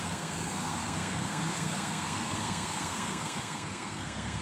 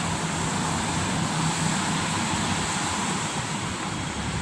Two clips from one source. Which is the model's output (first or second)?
first